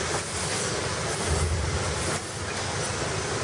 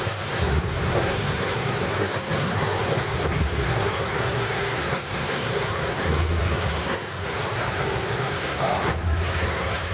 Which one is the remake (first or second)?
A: second